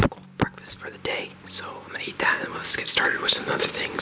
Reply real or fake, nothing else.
real